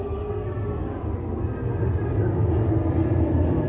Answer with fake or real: real